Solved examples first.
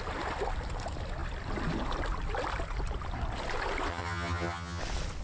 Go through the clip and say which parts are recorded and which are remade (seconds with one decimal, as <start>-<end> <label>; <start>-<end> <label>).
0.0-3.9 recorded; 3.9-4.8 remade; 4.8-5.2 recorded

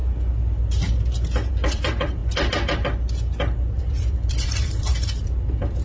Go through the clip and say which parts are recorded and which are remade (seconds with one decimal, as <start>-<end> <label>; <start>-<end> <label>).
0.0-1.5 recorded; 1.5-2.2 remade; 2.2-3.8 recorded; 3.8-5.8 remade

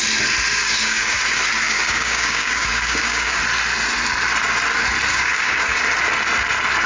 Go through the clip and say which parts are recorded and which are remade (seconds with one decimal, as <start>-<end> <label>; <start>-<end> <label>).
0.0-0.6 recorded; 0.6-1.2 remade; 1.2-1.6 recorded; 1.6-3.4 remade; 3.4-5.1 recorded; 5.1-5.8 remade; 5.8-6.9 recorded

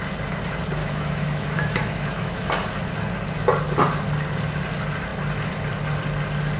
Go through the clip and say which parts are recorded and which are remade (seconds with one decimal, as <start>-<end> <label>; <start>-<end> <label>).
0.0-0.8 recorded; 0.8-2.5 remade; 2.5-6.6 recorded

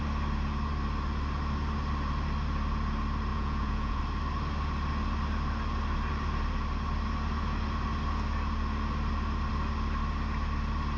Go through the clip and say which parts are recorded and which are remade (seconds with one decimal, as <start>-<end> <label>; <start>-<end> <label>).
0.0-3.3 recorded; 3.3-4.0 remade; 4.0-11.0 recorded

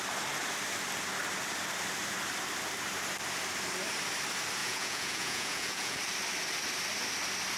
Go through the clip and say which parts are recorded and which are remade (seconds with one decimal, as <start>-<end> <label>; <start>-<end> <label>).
0.0-4.6 recorded; 4.6-6.0 remade; 6.0-7.6 recorded

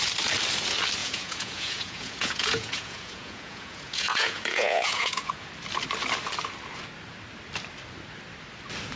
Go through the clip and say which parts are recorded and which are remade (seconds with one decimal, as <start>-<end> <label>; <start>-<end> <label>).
0.0-1.0 recorded; 1.0-5.5 remade; 5.5-9.0 recorded

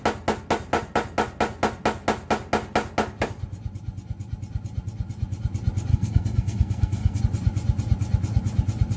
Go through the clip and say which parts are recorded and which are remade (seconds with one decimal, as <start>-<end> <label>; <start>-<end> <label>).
0.0-5.9 recorded; 5.9-7.2 remade; 7.2-9.0 recorded